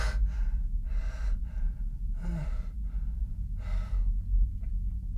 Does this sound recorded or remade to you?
recorded